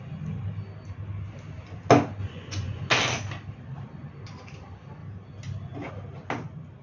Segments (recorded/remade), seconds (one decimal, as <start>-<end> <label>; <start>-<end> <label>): 0.0-2.2 recorded; 2.2-2.9 remade; 2.9-6.8 recorded

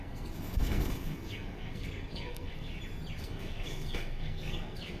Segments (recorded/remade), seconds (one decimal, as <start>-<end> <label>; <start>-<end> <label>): 0.0-2.7 remade; 2.7-3.2 recorded; 3.2-5.0 remade

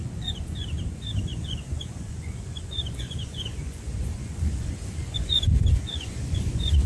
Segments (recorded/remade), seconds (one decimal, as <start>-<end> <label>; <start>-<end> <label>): 0.0-6.9 remade

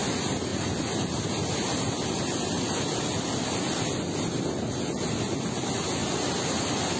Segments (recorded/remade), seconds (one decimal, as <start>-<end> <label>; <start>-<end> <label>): 0.0-7.0 recorded

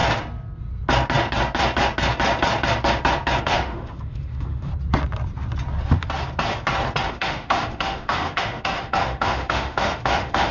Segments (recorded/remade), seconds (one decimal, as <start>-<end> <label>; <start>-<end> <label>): 0.0-3.4 recorded; 3.4-4.7 remade; 4.7-7.1 recorded; 7.1-10.5 remade

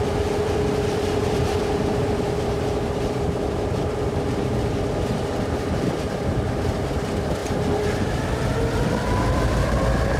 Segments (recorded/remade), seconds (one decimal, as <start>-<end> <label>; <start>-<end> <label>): 0.0-7.4 remade; 7.4-8.6 recorded; 8.6-10.2 remade

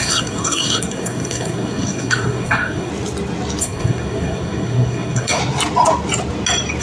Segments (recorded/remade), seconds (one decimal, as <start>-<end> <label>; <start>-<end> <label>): 0.0-2.9 remade; 2.9-3.6 recorded; 3.6-5.4 remade; 5.4-6.8 recorded

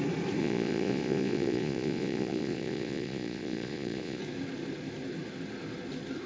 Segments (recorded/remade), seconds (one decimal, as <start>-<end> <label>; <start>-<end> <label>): 0.0-0.4 recorded; 0.4-4.2 remade; 4.2-6.3 recorded